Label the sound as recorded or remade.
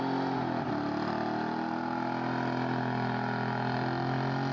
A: recorded